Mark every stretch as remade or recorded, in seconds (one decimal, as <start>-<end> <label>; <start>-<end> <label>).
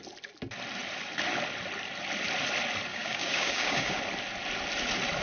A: 0.0-2.9 recorded; 2.9-4.0 remade; 4.0-5.2 recorded